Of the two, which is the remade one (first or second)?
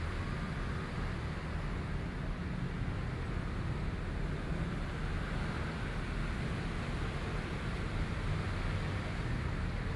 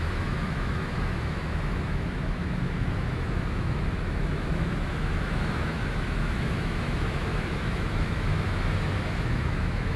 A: second